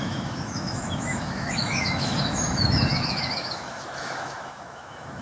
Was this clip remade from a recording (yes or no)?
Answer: yes